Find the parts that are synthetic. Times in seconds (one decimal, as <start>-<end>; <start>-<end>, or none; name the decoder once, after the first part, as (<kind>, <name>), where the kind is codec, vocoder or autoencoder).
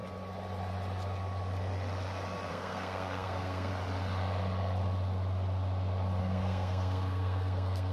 2.5-3.7 (codec, SNAC); 6.2-7.9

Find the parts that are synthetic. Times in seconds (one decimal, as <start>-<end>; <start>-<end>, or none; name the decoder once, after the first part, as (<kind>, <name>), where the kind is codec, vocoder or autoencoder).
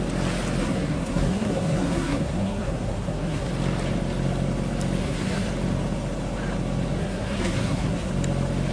0.6-3.5 (codec, SNAC); 5.0-5.5; 7.0-8.1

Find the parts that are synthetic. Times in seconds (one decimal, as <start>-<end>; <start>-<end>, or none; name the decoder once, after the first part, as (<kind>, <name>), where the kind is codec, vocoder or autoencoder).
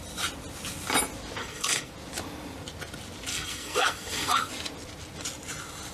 1.4-1.9 (codec, SNAC); 3.3-4.5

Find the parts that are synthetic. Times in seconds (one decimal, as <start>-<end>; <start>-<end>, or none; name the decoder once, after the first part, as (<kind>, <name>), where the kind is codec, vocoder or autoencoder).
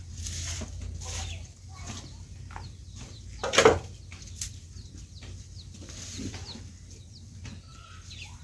none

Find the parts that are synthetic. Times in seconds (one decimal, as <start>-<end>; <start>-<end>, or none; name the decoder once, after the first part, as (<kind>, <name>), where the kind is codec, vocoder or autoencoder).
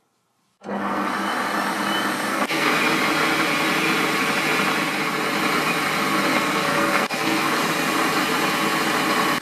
0.5-1.1 (codec, SNAC); 2.3-2.8; 6.3-7.6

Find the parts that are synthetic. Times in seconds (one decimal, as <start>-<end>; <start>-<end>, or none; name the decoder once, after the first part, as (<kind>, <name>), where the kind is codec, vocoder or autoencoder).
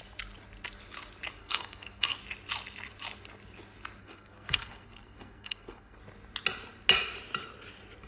1.4-2.2 (codec, SNAC); 4.0-6.0